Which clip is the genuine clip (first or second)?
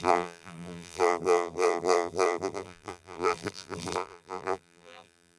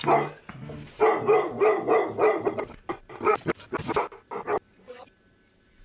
second